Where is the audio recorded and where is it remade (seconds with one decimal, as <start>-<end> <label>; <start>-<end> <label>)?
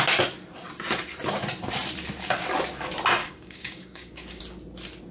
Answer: 0.0-3.2 recorded; 3.2-4.4 remade; 4.4-5.1 recorded